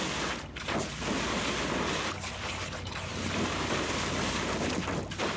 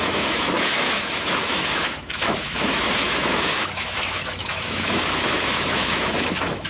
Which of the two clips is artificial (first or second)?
second